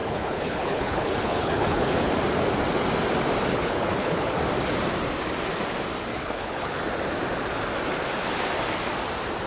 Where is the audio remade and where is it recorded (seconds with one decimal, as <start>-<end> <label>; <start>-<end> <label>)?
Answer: 0.0-2.1 remade; 2.1-3.5 recorded; 3.5-4.4 remade; 4.4-6.1 recorded; 6.1-6.8 remade; 6.8-9.5 recorded